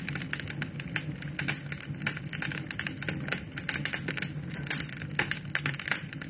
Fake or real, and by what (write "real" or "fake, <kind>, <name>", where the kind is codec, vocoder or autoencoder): real